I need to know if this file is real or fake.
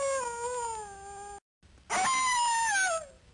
real